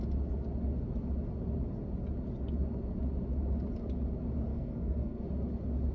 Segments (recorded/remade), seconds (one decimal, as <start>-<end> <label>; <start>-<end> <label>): 0.0-4.5 recorded; 4.5-5.2 remade; 5.2-5.9 recorded